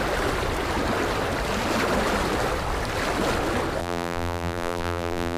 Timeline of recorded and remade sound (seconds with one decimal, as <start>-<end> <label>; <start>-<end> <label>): 0.0-3.8 recorded; 3.8-5.4 remade

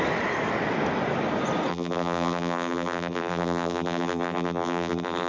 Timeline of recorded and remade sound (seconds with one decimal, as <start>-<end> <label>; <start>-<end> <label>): 0.0-1.7 recorded; 1.7-5.3 remade

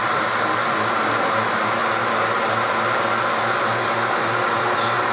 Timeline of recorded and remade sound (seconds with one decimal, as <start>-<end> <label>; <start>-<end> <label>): 0.0-5.1 recorded